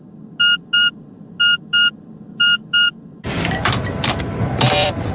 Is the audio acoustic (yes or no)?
yes